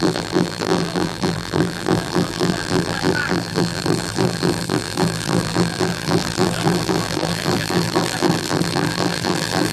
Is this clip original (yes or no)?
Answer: no